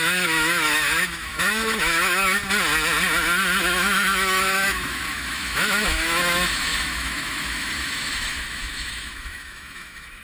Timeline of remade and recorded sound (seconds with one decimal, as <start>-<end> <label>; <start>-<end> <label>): 0.0-2.4 remade; 2.4-3.6 recorded; 3.6-10.2 remade